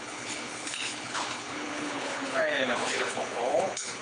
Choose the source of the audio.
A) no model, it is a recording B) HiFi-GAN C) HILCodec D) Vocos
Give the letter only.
C